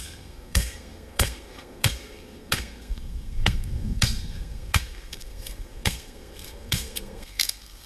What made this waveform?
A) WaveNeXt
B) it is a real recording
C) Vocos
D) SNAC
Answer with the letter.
D